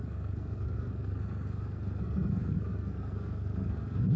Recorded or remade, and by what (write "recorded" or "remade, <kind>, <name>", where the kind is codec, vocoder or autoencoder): remade, codec, SNAC